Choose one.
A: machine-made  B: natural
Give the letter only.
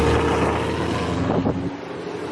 B